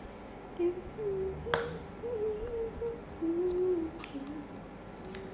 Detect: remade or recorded recorded